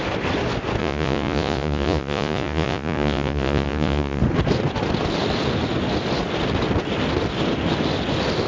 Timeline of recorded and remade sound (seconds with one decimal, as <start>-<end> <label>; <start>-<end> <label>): 0.0-0.8 recorded; 0.8-4.2 remade; 4.2-8.5 recorded